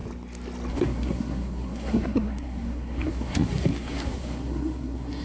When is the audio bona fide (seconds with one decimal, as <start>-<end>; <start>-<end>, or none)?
0.0-0.7